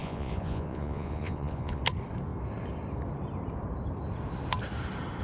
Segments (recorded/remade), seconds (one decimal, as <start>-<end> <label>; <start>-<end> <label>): 0.0-1.8 remade; 1.8-5.2 recorded